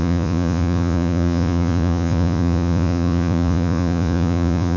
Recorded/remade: remade